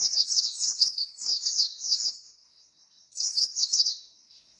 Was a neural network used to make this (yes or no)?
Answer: yes